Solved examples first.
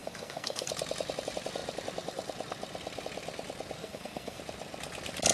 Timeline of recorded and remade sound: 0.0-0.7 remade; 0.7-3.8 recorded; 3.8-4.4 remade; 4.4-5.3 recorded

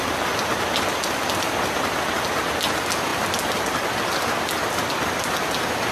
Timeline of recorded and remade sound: 0.0-5.9 recorded